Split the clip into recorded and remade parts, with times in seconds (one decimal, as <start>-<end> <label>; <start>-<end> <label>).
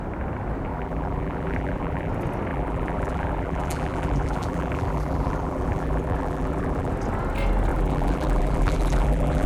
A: 0.0-0.7 recorded; 0.7-2.1 remade; 2.1-2.5 recorded; 2.5-6.9 remade; 6.9-7.7 recorded; 7.7-9.5 remade